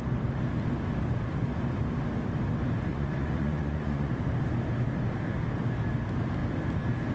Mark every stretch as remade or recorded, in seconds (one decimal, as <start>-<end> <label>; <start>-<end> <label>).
0.0-2.9 recorded; 2.9-4.1 remade; 4.1-7.1 recorded